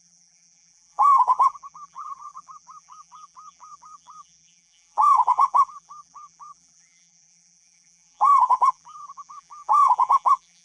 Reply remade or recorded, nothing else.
remade